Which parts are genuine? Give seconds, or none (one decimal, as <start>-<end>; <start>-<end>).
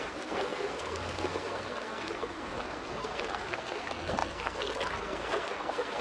none